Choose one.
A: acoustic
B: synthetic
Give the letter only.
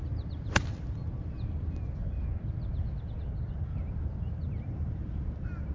A